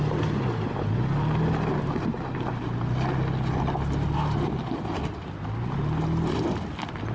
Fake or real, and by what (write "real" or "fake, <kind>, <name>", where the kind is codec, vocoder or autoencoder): real